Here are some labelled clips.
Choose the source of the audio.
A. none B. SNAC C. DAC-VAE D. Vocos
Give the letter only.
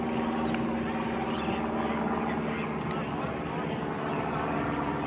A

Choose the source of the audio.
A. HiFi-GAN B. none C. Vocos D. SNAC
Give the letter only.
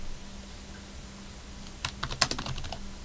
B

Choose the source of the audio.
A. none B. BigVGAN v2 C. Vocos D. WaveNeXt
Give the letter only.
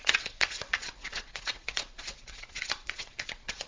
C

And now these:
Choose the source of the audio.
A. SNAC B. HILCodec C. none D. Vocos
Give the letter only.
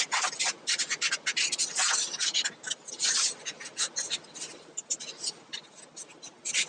C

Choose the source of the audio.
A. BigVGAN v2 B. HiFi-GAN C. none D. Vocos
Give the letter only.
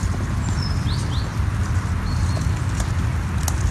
C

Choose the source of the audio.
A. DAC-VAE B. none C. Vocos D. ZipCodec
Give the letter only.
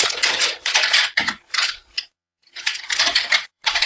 C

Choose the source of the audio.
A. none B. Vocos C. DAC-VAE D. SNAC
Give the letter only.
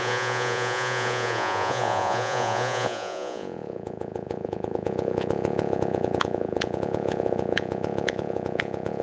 B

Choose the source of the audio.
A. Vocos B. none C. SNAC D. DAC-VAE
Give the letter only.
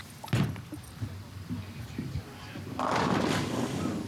B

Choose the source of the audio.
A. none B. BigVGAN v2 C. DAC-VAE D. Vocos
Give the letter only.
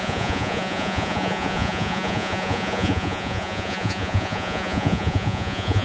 D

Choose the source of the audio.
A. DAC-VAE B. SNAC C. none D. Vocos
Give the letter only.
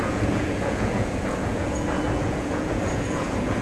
D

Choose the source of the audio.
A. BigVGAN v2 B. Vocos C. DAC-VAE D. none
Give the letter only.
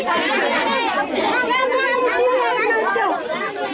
D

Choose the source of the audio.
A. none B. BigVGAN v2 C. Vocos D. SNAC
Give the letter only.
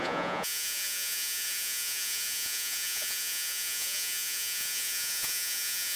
C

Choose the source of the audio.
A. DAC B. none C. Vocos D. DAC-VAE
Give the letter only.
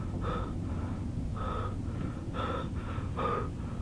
B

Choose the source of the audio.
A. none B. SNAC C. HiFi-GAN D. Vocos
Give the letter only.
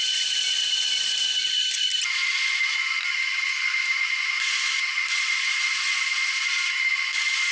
A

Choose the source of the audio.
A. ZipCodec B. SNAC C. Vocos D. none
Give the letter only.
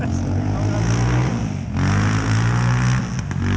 D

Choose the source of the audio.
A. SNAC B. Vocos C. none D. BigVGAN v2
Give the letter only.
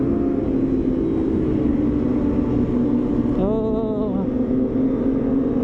C